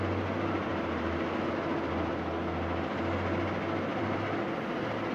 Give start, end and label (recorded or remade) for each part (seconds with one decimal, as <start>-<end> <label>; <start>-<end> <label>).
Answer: 0.0-3.9 recorded; 3.9-5.1 remade